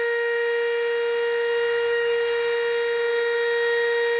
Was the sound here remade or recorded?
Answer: recorded